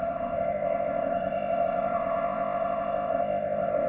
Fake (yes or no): yes